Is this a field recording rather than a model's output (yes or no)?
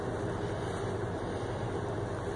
yes